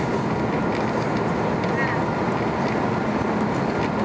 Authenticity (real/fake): real